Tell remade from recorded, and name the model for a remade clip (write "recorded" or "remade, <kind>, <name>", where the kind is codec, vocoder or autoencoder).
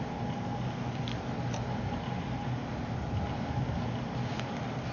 recorded